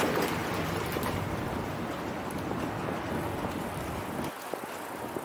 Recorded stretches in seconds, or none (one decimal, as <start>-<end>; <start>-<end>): 0.0-5.2